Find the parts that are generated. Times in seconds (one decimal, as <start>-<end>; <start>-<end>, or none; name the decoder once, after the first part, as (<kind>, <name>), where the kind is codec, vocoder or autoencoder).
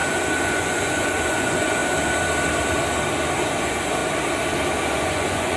0.0-1.8 (vocoder, Vocos); 3.4-4.0; 4.8-5.6